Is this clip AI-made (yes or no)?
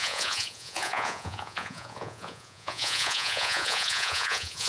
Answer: yes